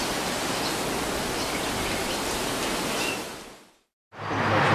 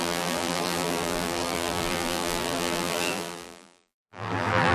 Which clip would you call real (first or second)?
first